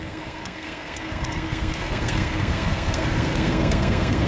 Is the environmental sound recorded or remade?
remade